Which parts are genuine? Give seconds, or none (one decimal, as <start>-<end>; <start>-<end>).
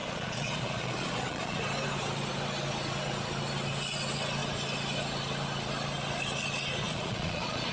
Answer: 1.6-6.8